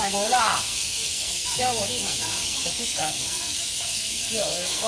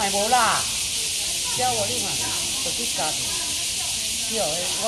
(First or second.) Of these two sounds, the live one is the second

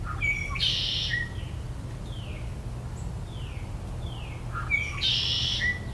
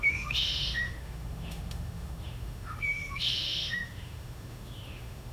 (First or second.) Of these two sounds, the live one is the first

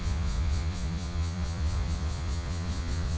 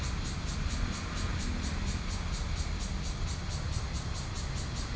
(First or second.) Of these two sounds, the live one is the second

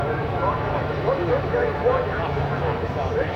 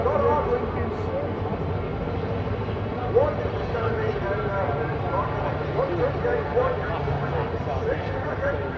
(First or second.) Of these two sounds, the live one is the second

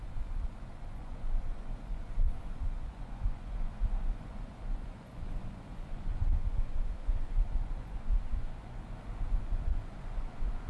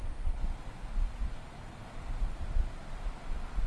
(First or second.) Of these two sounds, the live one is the second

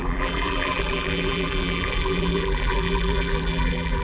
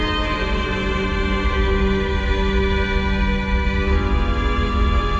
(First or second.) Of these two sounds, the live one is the second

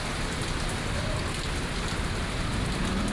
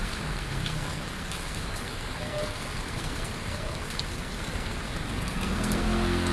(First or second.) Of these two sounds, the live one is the first